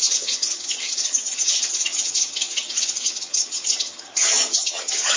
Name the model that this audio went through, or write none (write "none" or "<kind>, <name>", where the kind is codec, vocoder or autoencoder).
vocoder, HiFi-GAN